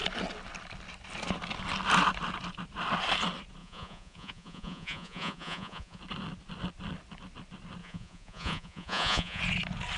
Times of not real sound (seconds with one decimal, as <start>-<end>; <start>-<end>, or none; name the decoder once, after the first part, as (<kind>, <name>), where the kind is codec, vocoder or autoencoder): 3.6-6.0 (vocoder, Vocos); 7.8-9.4